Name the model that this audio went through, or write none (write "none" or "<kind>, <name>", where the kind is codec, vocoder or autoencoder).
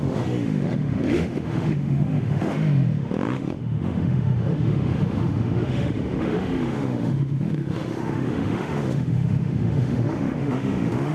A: autoencoder, DAC-VAE